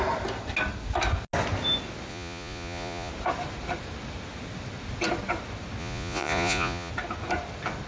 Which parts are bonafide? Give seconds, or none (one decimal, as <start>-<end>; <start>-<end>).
0.0-2.1; 3.1-5.8; 6.9-7.9